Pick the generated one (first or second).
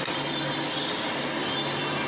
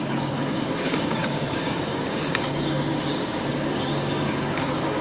second